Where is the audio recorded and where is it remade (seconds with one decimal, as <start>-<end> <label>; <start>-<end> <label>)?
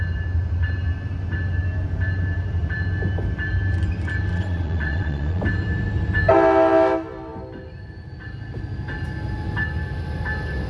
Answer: 0.0-4.3 recorded; 4.3-5.4 remade; 5.4-10.7 recorded